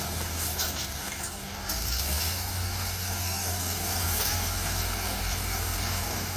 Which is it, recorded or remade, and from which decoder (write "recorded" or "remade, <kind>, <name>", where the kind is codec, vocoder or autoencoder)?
remade, codec, DAC